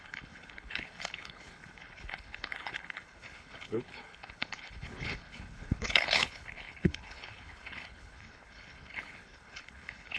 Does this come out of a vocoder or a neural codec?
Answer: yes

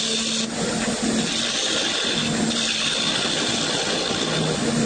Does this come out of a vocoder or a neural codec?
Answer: no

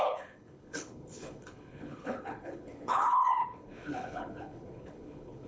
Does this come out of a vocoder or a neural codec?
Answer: yes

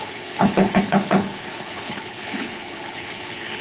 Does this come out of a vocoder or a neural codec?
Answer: yes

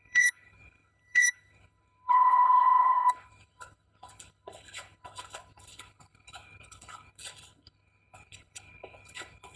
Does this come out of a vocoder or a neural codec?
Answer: yes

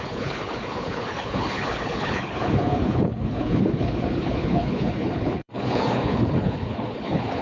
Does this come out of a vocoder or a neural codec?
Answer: yes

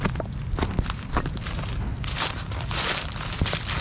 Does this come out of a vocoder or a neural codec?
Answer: no